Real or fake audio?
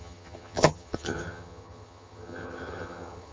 fake